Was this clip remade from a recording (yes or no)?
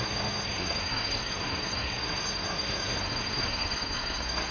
yes